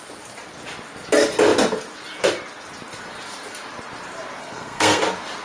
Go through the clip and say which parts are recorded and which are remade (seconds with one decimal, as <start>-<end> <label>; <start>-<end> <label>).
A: 0.0-4.4 recorded; 4.4-5.0 remade; 5.0-5.4 recorded